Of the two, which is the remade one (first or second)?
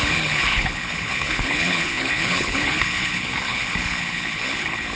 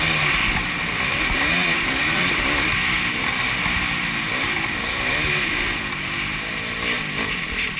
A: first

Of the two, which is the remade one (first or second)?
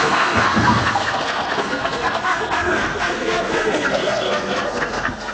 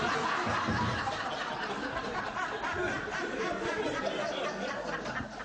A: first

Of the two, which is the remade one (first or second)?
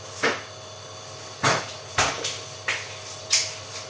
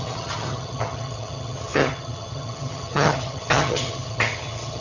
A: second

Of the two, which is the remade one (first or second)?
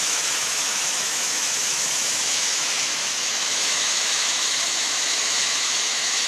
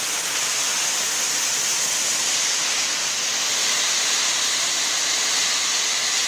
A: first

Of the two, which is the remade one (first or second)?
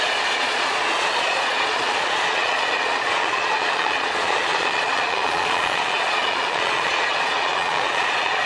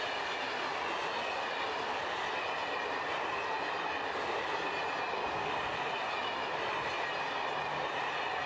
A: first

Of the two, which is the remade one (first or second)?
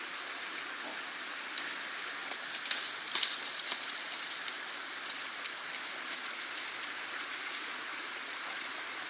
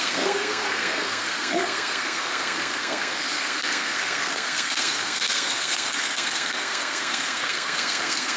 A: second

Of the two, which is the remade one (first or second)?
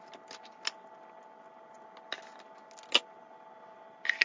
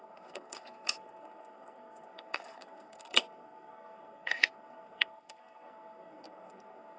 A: second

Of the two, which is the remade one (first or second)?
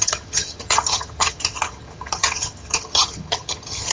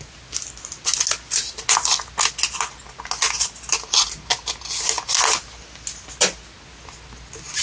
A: first